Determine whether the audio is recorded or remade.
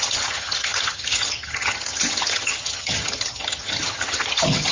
remade